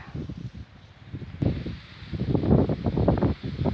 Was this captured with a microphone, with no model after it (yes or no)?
yes